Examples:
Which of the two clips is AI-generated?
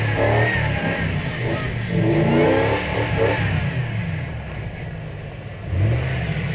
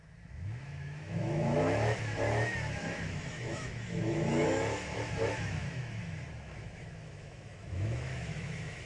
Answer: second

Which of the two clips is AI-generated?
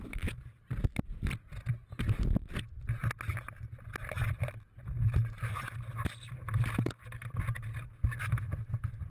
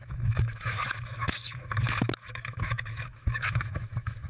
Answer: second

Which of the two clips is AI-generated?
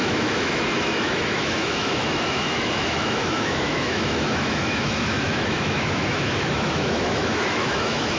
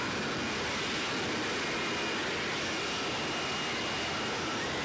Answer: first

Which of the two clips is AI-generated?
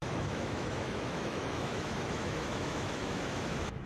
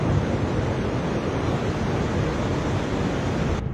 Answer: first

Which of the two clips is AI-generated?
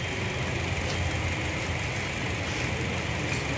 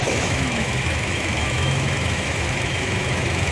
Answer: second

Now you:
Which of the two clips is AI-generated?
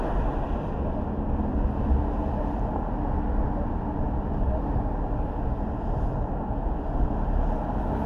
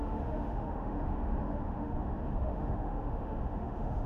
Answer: second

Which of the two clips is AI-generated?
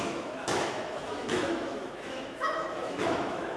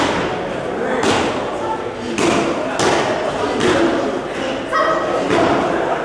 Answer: first